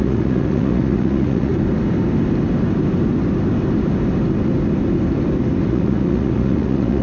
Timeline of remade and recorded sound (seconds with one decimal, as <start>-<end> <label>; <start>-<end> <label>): 0.0-1.5 remade; 1.5-5.7 recorded; 5.7-7.0 remade